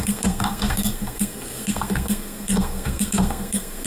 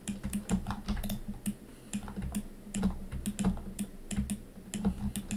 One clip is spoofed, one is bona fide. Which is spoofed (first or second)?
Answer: first